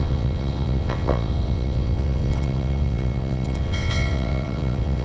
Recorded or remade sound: remade